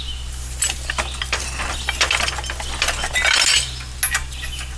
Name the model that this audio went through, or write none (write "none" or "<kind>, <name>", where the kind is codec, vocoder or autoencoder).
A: none